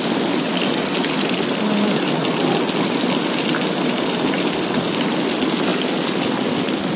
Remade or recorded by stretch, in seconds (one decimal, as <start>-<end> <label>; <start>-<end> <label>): 0.0-7.0 recorded